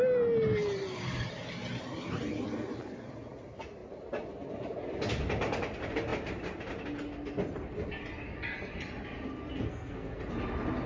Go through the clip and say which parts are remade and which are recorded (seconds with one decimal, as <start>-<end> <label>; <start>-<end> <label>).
0.0-9.6 recorded; 9.6-10.2 remade; 10.2-10.9 recorded